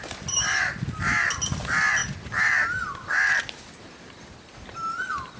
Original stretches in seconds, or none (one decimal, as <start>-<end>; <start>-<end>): 0.0-5.4